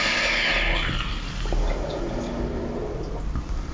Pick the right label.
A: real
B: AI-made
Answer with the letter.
A